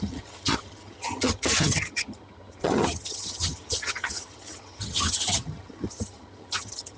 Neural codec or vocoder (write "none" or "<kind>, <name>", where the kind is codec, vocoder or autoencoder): vocoder, HiFi-GAN